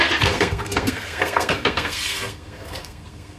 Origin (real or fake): fake